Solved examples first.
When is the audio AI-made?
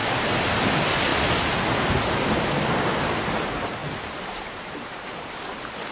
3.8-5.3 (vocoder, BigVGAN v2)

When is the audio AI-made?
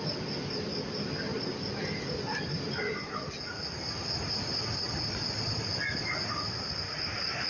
none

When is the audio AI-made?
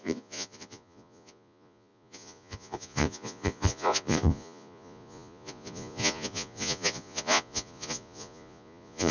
0.0-9.1 (vocoder, Vocos)